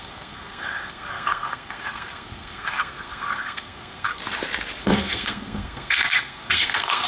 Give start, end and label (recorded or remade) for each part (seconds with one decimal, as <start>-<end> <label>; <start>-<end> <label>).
0.0-4.2 remade; 4.2-4.8 recorded; 4.8-7.1 remade

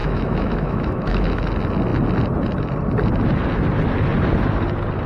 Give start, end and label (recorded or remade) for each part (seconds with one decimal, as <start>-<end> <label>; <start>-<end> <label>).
0.0-1.4 remade; 1.4-5.1 recorded

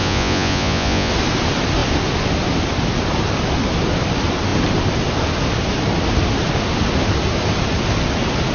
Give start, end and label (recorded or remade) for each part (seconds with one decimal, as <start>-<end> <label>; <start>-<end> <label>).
0.0-1.1 remade; 1.1-8.5 recorded